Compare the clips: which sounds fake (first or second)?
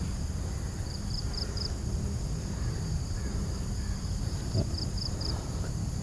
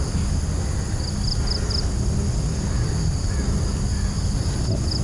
first